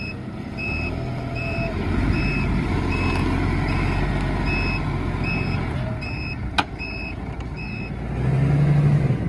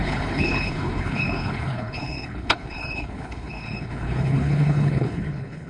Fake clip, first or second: second